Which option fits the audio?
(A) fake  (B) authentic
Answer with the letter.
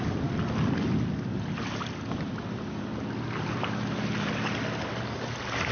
B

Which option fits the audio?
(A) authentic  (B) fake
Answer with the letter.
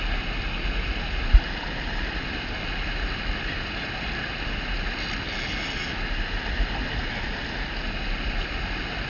A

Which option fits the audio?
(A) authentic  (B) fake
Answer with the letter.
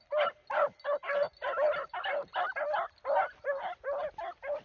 A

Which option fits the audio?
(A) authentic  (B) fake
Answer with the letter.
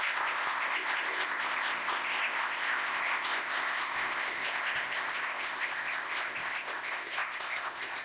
B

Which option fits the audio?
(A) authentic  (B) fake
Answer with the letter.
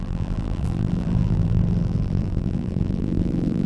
B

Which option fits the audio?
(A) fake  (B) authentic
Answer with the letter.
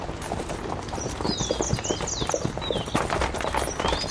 B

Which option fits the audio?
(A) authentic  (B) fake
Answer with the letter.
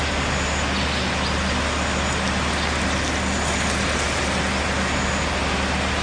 A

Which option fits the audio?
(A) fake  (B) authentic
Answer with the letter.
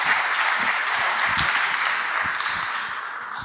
B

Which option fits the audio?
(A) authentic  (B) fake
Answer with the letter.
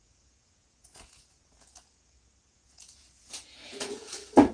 B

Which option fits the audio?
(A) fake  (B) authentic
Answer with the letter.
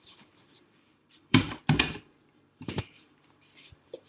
A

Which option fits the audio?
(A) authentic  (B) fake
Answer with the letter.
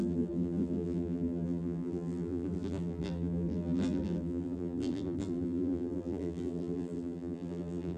B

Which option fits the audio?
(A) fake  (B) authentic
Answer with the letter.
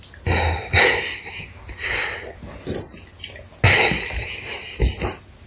B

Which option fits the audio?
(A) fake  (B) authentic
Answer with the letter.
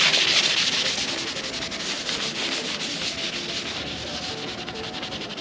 B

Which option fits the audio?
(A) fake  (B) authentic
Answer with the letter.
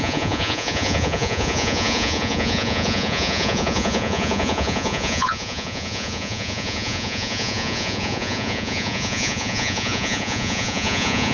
A